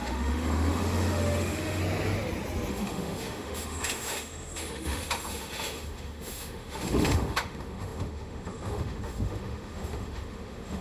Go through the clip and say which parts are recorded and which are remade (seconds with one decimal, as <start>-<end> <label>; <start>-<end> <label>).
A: 0.0-1.8 remade; 1.8-2.7 recorded; 2.7-10.8 remade